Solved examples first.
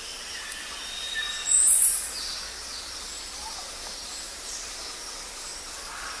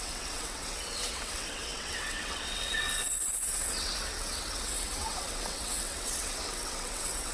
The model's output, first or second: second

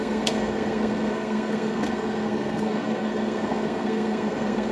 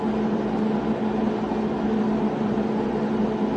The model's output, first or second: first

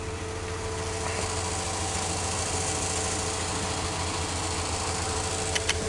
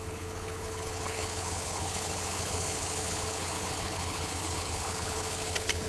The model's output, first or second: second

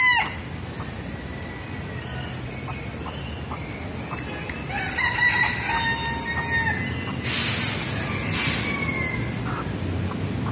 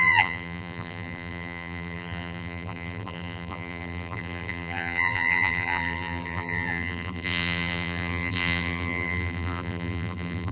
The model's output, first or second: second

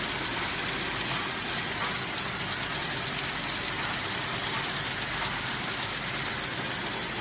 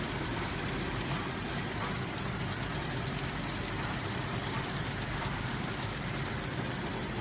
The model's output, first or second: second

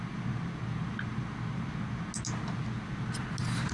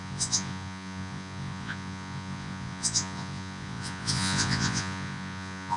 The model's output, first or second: second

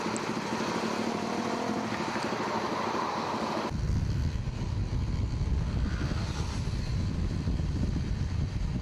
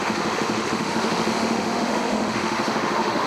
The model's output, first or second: second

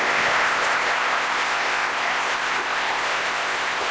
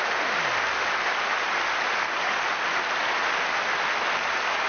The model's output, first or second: first